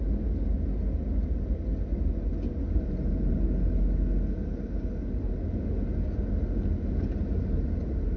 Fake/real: real